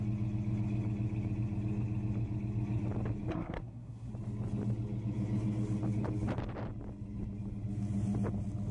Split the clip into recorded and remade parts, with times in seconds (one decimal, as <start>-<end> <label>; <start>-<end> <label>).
0.0-3.3 recorded; 3.3-4.1 remade; 4.1-8.7 recorded